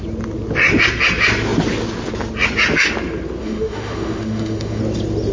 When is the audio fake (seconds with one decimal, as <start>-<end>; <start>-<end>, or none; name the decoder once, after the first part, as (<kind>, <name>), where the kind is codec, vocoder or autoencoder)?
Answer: 3.4-4.8 (autoencoder, DAC-VAE)